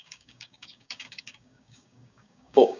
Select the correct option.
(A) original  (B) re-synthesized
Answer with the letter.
B